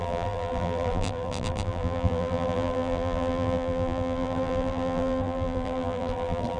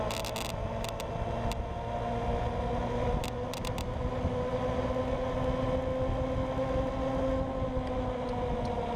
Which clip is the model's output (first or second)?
first